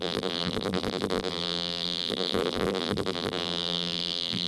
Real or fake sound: fake